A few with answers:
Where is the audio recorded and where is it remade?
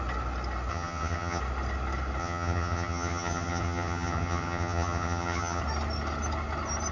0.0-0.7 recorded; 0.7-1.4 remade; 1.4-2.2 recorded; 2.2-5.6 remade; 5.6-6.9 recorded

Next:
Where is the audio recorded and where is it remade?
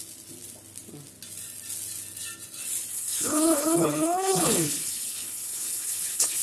0.0-2.9 recorded; 2.9-6.4 remade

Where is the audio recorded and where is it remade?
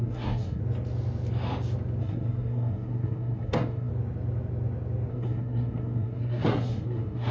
0.0-0.6 remade; 0.6-2.0 recorded; 2.0-3.9 remade; 3.9-5.1 recorded; 5.1-7.3 remade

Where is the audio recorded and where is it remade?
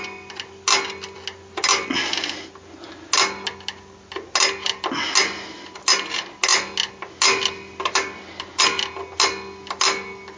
0.0-10.4 recorded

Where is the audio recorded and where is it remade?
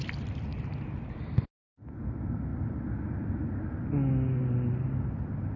0.0-5.6 recorded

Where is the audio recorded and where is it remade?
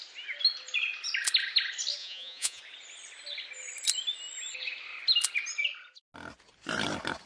0.0-2.0 recorded; 2.0-2.6 remade; 2.6-7.3 recorded